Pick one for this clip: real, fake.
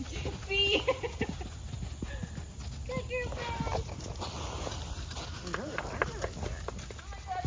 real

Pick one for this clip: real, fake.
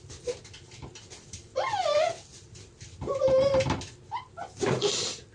real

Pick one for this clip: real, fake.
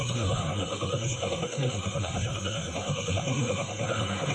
fake